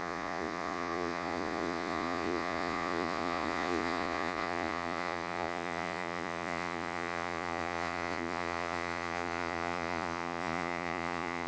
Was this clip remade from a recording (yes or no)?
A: yes